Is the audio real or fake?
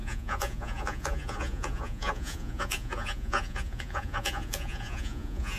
fake